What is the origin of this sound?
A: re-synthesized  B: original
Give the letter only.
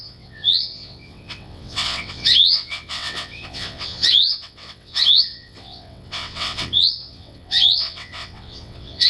A